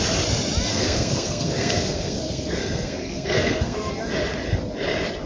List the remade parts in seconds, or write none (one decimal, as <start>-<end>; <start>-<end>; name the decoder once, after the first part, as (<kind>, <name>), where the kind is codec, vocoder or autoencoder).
0.7-3.9 (codec, SNAC)